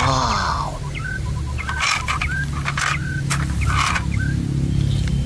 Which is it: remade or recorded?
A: recorded